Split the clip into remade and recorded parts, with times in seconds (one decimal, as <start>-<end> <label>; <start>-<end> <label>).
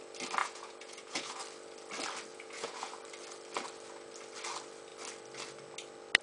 0.0-0.4 recorded; 0.4-1.4 remade; 1.4-2.3 recorded; 2.3-2.9 remade; 2.9-6.2 recorded